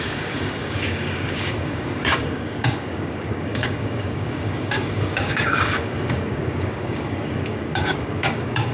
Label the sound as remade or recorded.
remade